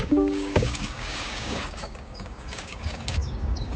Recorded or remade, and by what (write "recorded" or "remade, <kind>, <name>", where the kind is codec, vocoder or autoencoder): remade, codec, DAC